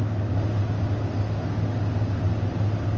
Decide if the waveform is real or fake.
real